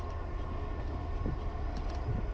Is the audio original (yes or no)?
yes